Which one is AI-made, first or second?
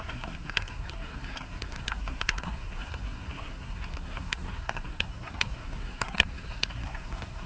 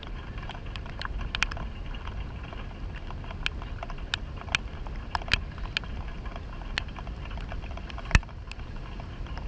first